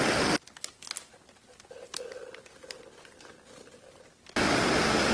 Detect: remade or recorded recorded